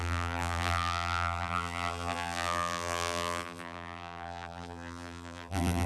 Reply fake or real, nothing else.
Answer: fake